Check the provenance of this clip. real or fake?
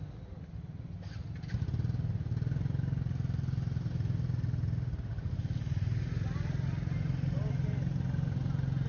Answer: real